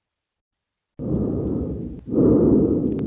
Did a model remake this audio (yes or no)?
no